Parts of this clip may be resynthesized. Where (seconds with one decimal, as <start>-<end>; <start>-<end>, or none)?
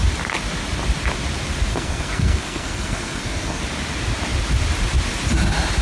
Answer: 1.7-3.6